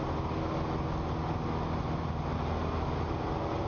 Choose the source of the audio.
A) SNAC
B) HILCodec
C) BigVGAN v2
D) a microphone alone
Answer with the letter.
D